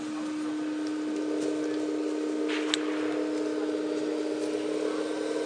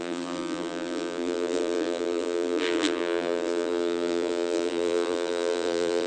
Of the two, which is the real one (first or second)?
first